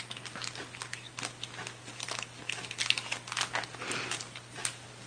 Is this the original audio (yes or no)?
yes